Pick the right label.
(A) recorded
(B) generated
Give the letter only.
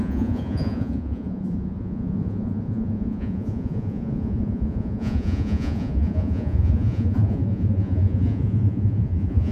B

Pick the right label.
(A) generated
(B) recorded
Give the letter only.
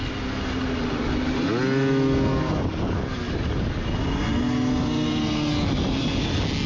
B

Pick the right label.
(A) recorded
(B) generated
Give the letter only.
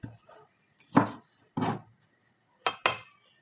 A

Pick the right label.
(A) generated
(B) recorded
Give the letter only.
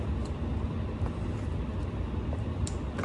B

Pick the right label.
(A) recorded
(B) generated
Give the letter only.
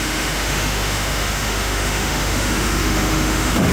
B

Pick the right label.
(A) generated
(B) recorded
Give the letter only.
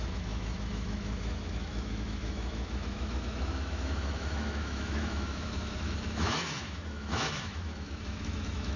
A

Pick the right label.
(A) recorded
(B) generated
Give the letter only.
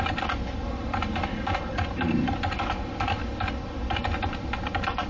A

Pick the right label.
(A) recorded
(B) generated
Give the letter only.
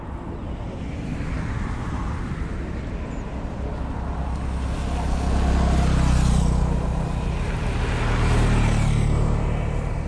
A